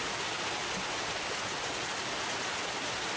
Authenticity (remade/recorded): recorded